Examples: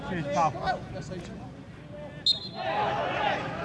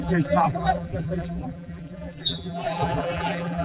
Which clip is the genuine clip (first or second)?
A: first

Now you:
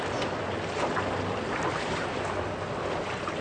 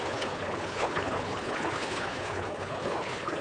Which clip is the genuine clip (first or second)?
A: first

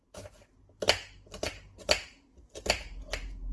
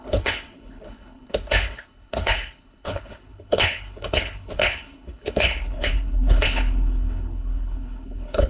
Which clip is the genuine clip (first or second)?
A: first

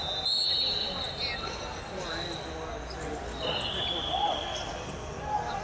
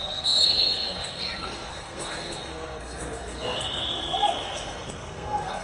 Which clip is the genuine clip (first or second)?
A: first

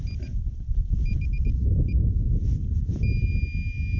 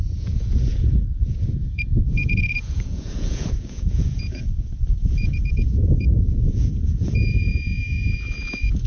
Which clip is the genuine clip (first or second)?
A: first